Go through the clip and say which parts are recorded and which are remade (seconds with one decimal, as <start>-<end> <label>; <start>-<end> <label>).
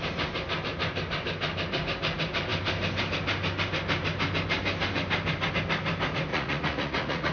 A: 0.0-6.3 recorded; 6.3-7.3 remade